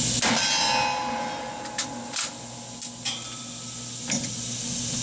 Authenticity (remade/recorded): recorded